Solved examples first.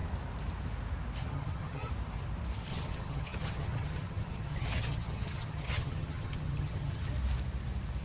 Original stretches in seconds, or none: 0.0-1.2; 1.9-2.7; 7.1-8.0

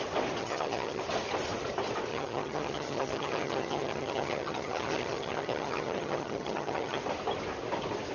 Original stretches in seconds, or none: 0.0-0.4; 1.0-2.1; 7.0-8.1